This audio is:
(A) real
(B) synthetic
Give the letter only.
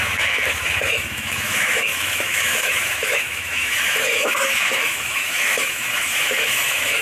B